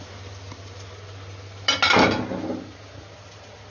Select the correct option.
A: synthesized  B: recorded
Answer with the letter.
B